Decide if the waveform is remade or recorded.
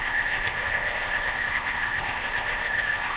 remade